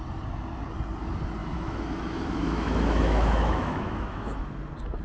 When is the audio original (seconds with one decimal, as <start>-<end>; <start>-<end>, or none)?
0.0-1.4; 4.4-5.0